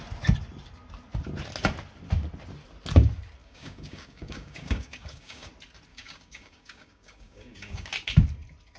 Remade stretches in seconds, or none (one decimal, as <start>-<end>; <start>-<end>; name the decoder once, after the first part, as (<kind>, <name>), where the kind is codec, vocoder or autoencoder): 3.4-5.5 (codec, DAC); 5.9-7.9